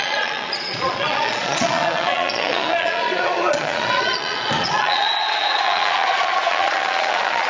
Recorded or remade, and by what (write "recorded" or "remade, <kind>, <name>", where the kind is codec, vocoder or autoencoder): remade, vocoder, Vocos